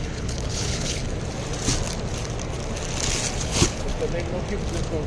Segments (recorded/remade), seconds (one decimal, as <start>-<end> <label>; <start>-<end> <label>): 0.0-1.0 remade; 1.0-3.4 recorded; 3.4-3.9 remade; 3.9-5.1 recorded